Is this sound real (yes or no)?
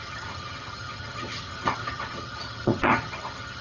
no